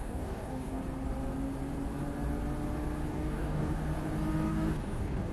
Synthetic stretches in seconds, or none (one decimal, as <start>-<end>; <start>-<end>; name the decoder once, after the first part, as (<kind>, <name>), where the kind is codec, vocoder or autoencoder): 0.0-0.8 (codec, DAC); 3.1-3.9; 4.5-5.3